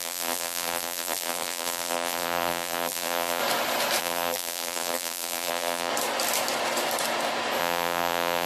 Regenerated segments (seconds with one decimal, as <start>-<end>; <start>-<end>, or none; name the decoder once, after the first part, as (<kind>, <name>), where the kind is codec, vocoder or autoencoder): 0.0-3.4 (vocoder, BigVGAN v2); 4.0-5.9; 7.6-8.5